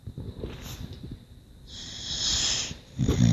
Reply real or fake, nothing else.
real